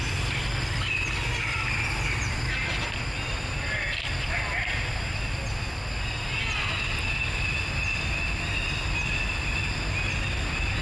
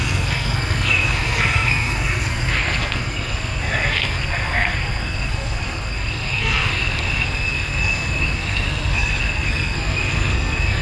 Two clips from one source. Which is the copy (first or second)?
second